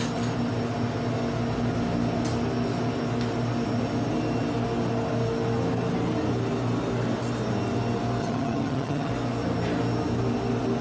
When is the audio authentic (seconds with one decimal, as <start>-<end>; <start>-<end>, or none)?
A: 0.0-8.2; 9.1-10.8